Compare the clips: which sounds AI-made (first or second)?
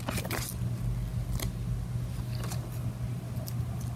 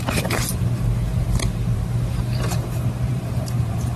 second